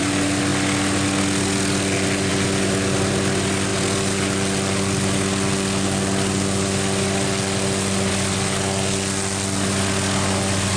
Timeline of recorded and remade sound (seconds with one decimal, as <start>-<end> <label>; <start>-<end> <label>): 0.0-10.8 recorded